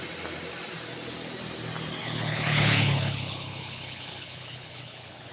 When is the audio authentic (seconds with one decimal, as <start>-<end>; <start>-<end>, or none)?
0.0-2.0